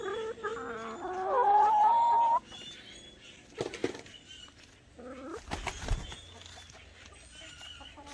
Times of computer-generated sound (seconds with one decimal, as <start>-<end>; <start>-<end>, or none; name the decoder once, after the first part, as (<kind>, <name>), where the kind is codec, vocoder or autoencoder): none

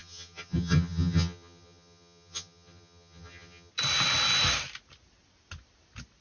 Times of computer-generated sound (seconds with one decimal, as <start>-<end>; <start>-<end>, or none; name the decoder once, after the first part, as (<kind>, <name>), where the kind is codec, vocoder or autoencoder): 0.0-3.7 (vocoder, HiFi-GAN)

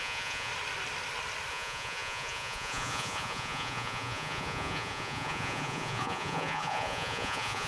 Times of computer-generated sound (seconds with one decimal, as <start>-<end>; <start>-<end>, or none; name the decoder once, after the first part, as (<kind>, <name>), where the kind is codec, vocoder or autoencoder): 0.0-0.5 (vocoder, Vocos); 1.5-7.7

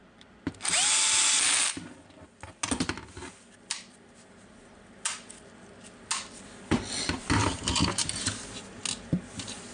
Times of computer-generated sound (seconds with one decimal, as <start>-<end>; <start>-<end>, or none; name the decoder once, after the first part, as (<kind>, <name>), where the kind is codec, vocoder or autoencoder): none

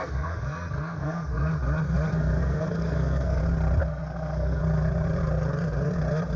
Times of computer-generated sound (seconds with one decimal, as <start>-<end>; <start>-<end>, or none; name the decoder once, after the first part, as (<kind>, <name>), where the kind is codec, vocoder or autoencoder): 0.0-1.5 (codec, SNAC); 2.1-3.4; 3.9-4.6